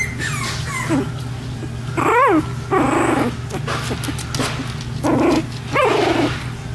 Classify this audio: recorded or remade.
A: recorded